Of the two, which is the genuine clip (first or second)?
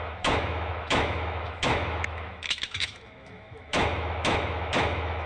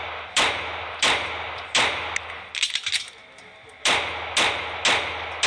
second